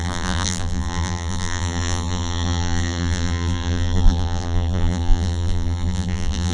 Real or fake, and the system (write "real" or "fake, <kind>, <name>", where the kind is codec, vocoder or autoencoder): fake, vocoder, BigVGAN v2